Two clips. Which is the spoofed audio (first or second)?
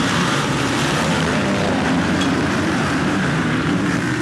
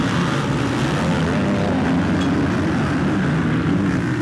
first